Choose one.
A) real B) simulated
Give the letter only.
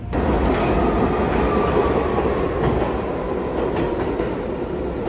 A